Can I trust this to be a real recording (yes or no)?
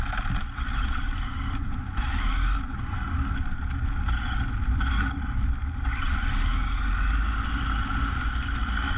yes